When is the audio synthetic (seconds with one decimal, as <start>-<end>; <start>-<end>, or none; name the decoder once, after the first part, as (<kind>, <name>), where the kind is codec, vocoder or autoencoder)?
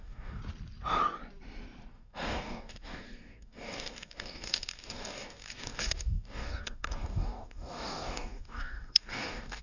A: 0.0-0.4 (codec, DAC); 1.9-9.6